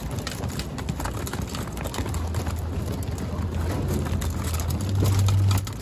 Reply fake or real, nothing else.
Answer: real